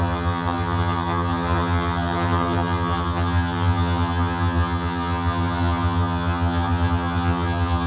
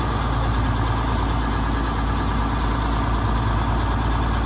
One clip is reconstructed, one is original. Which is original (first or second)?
second